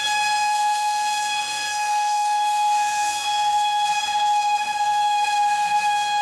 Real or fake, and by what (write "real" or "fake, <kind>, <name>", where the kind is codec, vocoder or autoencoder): fake, codec, SNAC